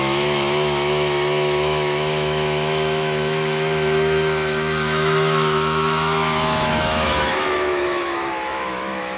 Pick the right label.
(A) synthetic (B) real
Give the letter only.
A